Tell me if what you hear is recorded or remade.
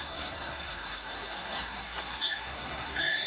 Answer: remade